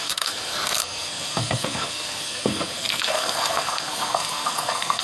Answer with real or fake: fake